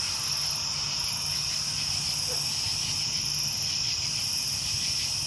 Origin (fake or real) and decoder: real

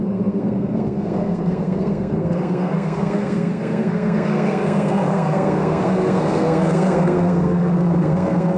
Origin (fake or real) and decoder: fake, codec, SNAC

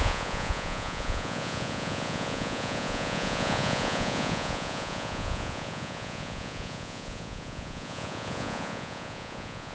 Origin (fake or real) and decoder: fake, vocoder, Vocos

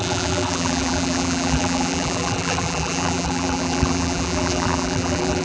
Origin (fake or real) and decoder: fake, vocoder, BigVGAN v2